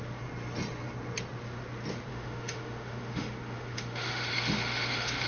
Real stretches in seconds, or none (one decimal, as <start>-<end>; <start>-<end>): 0.0-2.1